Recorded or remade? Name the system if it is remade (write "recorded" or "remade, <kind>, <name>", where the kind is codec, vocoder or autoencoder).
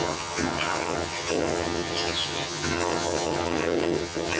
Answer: remade, vocoder, HiFi-GAN